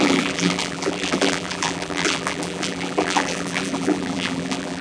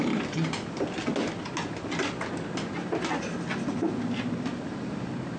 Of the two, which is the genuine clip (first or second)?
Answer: second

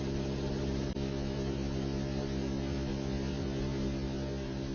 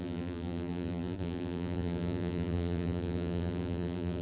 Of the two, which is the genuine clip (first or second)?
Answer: first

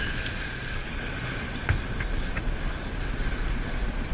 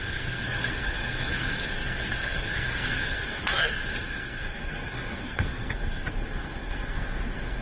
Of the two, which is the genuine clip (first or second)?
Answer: first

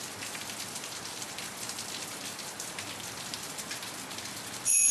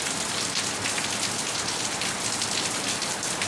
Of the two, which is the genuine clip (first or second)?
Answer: second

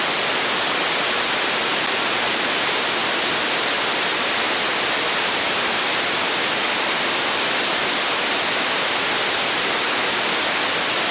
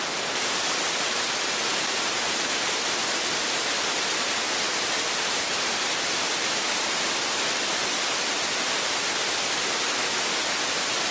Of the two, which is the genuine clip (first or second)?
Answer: first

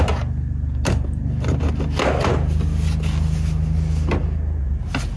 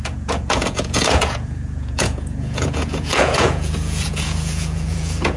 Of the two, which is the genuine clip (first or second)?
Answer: first